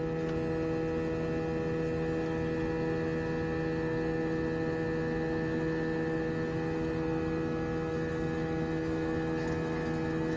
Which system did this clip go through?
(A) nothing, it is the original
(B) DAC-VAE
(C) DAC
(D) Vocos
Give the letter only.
A